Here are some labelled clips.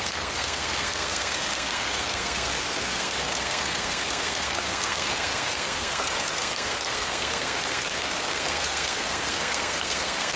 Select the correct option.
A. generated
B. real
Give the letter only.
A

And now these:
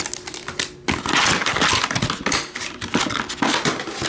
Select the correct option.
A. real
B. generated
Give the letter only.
A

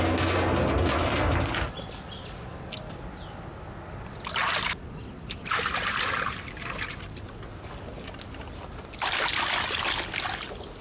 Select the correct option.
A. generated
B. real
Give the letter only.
B